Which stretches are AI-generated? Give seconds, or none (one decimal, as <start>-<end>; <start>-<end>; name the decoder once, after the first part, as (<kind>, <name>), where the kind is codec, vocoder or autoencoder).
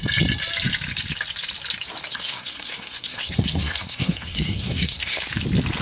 2.1-5.2 (codec, SNAC)